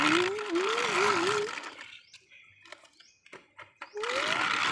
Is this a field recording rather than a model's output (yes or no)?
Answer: no